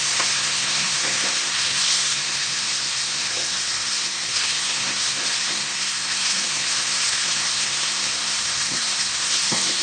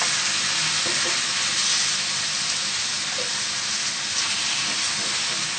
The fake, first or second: first